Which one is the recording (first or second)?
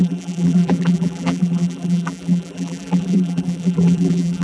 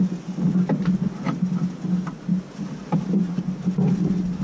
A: second